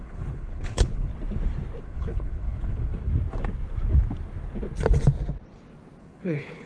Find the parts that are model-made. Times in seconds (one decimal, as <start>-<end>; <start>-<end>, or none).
0.0-1.1; 1.8-3.1; 6.0-6.7